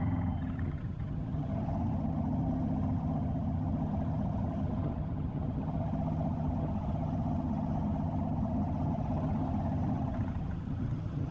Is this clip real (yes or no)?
no